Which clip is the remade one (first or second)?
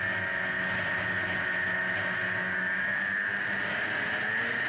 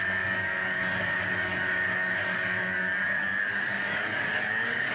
second